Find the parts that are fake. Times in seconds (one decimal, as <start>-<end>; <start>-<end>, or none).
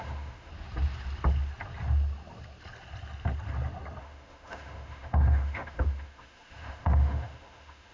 0.0-0.5; 4.0-7.9